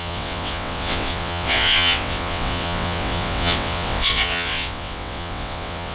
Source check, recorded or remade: remade